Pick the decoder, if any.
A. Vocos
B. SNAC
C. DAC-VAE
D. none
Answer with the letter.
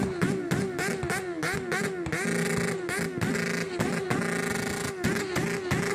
D